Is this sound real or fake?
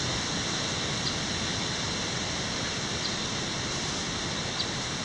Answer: real